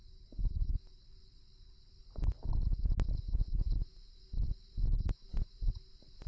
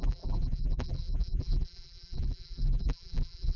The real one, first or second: first